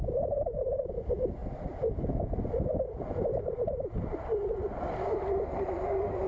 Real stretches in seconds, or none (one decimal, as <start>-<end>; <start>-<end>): 0.0-6.3

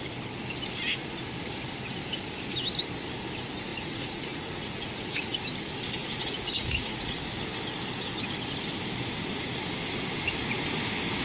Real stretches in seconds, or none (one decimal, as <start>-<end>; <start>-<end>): 0.0-3.7; 5.4-6.0; 7.1-11.2

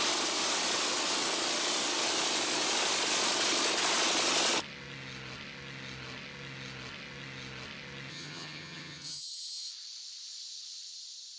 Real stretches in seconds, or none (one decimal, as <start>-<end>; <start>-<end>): 0.0-8.1; 9.7-11.4